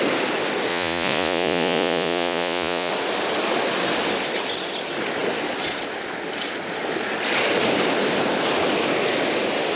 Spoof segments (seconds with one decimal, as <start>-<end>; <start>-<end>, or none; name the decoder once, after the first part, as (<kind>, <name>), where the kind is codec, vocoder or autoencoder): 0.7-2.9 (vocoder, Vocos)